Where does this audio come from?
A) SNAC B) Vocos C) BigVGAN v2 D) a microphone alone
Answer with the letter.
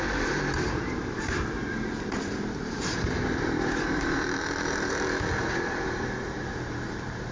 C